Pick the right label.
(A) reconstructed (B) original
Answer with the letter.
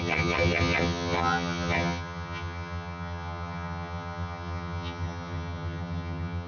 A